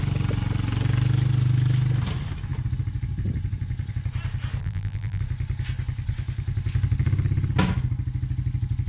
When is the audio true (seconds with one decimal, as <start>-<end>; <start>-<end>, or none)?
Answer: 0.0-4.6; 5.2-8.9